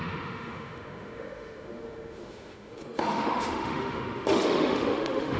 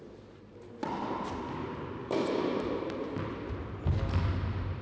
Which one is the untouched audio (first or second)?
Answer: second